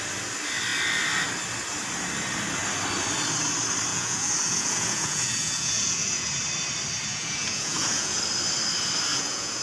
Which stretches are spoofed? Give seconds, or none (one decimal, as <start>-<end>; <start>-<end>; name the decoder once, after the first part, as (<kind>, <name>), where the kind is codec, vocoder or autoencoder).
3.9-6.3 (vocoder, Vocos); 7.1-8.2; 9.1-9.6